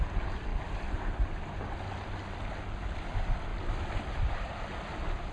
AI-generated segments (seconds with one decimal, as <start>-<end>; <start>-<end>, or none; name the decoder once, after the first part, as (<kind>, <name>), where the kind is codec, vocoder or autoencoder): none